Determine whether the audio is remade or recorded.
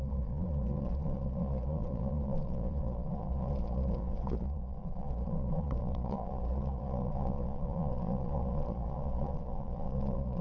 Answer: remade